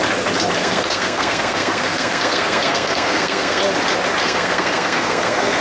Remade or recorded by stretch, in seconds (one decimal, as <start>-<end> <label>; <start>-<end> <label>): 0.0-0.6 recorded; 0.6-3.6 remade; 3.6-4.2 recorded; 4.2-5.6 remade